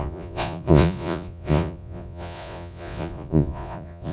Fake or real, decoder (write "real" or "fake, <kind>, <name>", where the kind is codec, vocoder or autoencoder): fake, vocoder, Vocos